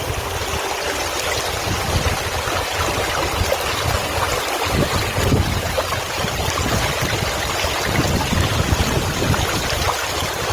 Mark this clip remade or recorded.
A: recorded